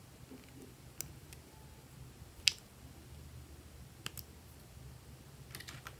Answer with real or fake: real